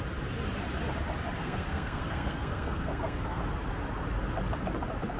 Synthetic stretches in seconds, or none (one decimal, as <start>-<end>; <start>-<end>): 1.4-3.4